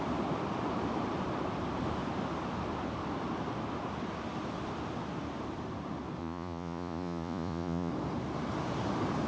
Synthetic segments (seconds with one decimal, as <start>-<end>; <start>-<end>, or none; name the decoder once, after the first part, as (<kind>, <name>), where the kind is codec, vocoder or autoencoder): 6.2-7.9 (vocoder, Vocos)